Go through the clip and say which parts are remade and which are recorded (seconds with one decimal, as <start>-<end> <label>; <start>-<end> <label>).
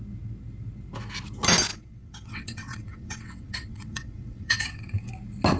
0.0-1.7 recorded; 1.7-5.1 remade; 5.1-5.6 recorded